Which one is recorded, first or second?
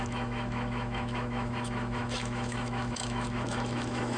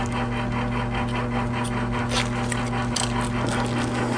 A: second